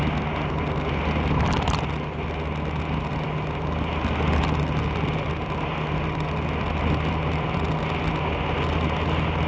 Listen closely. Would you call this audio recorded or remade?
recorded